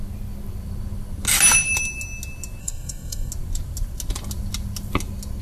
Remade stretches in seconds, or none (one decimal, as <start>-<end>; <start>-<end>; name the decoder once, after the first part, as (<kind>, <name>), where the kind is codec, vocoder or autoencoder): 2.6-3.3 (codec, SNAC)